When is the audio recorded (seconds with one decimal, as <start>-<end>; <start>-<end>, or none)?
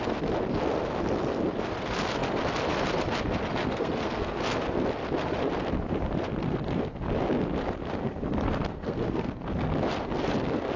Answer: 0.0-3.6; 4.4-8.7; 9.3-10.8